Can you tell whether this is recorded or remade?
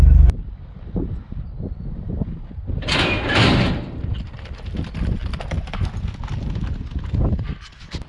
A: recorded